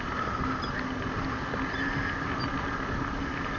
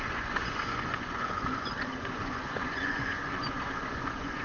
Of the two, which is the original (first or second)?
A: first